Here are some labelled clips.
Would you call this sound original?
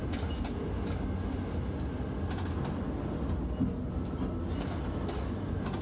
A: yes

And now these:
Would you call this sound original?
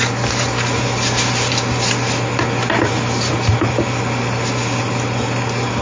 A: yes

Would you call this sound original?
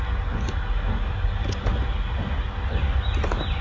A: yes